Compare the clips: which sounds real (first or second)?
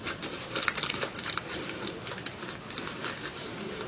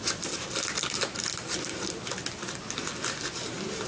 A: second